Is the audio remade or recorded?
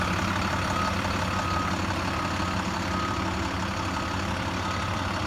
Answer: recorded